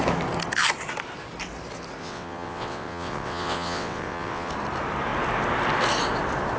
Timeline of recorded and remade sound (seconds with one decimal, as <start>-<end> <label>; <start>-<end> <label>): 0.0-2.0 recorded; 2.0-4.5 remade; 4.5-6.6 recorded

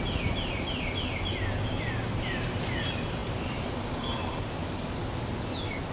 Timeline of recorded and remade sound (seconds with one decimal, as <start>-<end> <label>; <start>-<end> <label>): 0.0-5.9 recorded